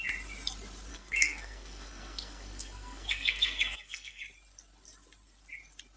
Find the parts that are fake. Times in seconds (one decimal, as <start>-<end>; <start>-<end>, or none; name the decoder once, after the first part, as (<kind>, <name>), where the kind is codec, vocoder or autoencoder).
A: 0.9-4.2 (codec, SNAC)

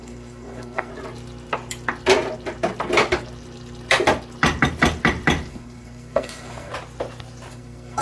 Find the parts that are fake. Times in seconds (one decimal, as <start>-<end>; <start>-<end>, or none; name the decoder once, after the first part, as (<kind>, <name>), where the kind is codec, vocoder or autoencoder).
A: 0.0-0.9 (codec, SNAC); 5.5-6.7; 7.5-8.0

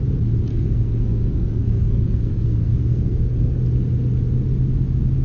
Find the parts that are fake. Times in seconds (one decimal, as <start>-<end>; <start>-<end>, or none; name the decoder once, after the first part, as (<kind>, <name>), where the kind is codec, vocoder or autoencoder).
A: 0.5-3.6 (codec, SNAC)